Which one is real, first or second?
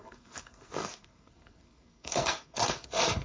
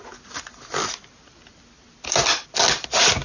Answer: second